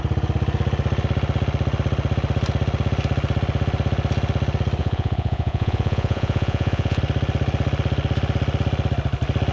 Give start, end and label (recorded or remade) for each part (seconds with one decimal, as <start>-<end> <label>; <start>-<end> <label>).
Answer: 0.0-4.8 recorded; 4.8-7.0 remade; 7.0-9.5 recorded